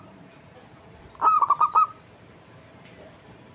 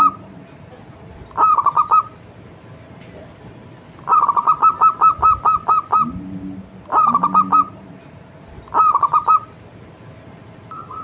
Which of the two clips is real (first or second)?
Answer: second